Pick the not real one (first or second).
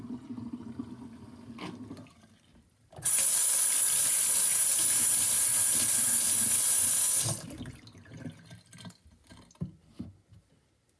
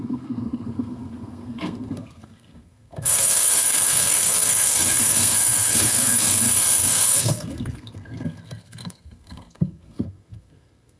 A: second